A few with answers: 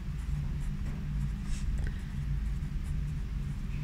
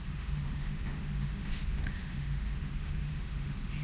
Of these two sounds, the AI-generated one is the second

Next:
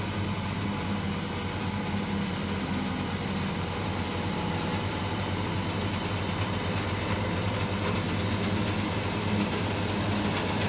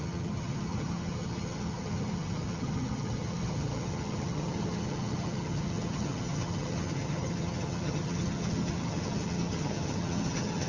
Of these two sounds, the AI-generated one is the second